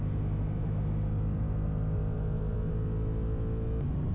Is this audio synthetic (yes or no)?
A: no